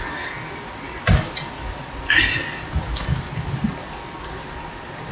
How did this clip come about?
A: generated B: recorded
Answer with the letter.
B